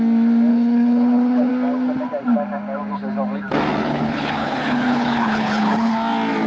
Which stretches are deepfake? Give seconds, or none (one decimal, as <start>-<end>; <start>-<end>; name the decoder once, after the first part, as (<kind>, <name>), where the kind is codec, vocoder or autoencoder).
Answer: 0.5-1.5 (codec, HILCodec); 3.8-5.9